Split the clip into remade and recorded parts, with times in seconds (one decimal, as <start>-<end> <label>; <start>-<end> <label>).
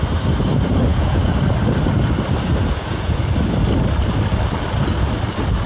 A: 0.0-0.9 recorded; 0.9-1.4 remade; 1.4-2.6 recorded; 2.6-3.2 remade; 3.2-5.7 recorded